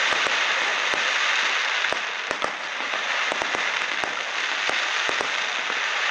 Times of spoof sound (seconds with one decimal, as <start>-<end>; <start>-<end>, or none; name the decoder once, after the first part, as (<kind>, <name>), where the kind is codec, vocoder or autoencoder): none